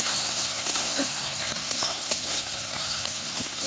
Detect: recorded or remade remade